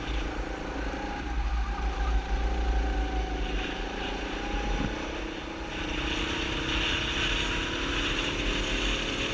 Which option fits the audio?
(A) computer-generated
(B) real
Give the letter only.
B